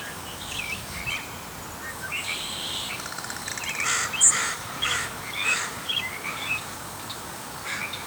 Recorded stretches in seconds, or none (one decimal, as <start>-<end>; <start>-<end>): 1.0-1.9; 3.5-4.3